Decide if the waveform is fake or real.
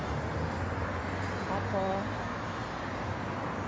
real